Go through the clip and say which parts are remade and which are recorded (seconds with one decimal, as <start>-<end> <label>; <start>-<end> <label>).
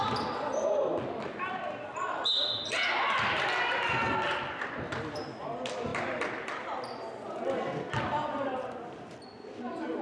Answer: 0.0-5.9 recorded; 5.9-6.8 remade; 6.8-10.0 recorded